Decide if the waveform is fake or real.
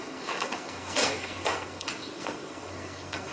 fake